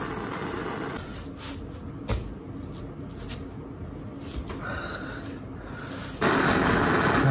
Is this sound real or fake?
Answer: real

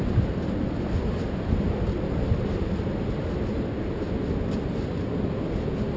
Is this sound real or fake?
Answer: real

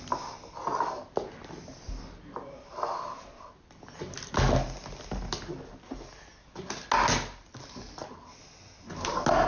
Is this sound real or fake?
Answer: real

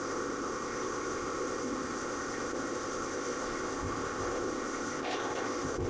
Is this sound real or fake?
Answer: fake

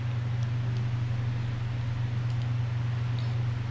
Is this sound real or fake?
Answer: real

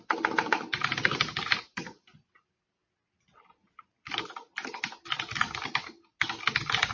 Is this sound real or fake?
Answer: real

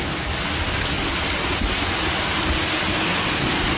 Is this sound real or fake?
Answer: real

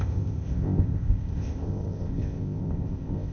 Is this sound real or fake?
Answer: fake